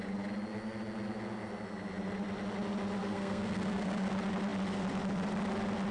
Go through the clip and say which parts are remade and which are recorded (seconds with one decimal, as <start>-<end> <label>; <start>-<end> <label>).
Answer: 0.0-3.0 recorded; 3.0-4.1 remade; 4.1-5.9 recorded